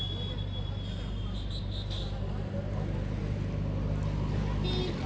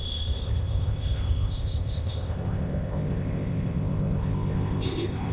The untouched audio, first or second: first